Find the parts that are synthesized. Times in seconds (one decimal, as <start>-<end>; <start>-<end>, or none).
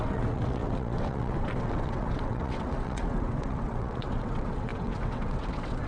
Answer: 0.0-5.9